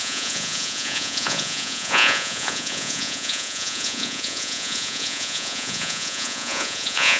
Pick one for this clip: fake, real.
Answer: fake